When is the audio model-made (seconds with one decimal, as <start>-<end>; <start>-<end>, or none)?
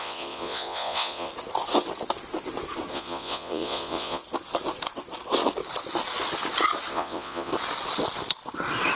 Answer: 0.0-1.3; 2.9-4.2; 6.9-7.5